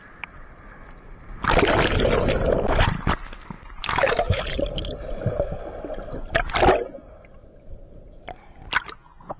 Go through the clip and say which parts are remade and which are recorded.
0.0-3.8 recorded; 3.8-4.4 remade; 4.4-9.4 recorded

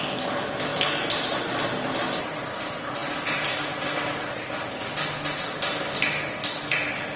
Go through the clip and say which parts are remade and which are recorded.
0.0-0.7 recorded; 0.7-2.0 remade; 2.0-7.2 recorded

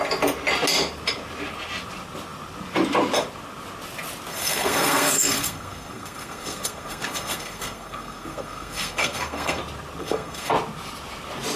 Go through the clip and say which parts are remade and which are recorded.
0.0-4.3 recorded; 4.3-9.6 remade; 9.6-10.0 recorded; 10.0-10.5 remade; 10.5-11.6 recorded